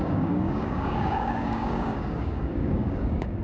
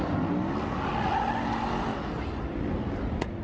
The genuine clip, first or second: second